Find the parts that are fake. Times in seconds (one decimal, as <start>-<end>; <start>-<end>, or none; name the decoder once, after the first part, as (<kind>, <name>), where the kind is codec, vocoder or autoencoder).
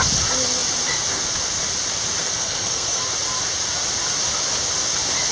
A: 2.2-3.0 (codec, SNAC)